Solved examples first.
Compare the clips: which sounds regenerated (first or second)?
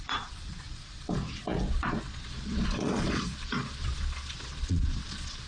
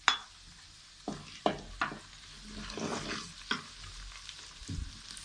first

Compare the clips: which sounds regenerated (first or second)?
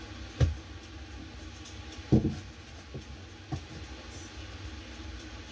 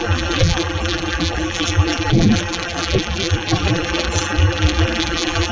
second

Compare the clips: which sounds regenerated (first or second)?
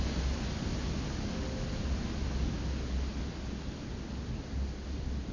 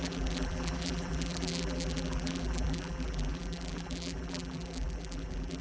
second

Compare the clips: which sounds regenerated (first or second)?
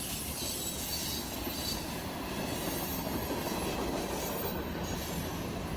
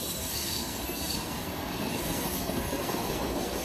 second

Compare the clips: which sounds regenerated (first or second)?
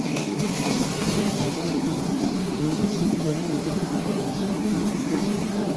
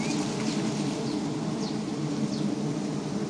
first